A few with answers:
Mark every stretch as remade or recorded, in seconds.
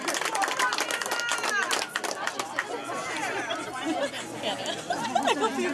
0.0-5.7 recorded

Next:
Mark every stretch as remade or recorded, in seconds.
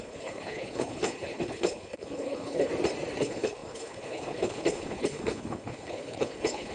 0.0-2.7 remade; 2.7-3.2 recorded; 3.2-6.7 remade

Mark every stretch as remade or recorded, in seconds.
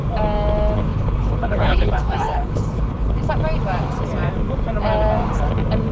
0.0-0.9 recorded; 0.9-3.3 remade; 3.3-5.9 recorded